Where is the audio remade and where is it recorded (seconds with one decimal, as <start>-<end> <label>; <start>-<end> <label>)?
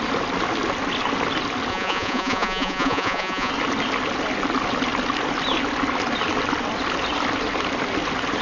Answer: 0.0-1.7 recorded; 1.7-3.5 remade; 3.5-8.4 recorded